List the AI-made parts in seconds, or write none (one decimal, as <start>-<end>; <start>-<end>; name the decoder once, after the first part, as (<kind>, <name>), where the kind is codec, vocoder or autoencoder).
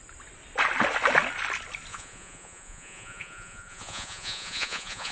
1.9-5.1 (vocoder, Vocos)